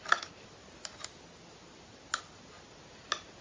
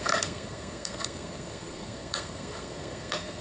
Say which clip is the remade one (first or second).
second